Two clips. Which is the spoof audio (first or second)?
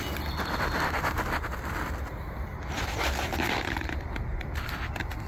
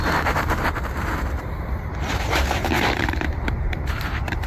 second